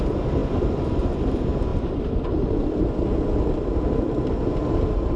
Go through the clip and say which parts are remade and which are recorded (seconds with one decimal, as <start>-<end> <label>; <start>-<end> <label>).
0.0-5.2 recorded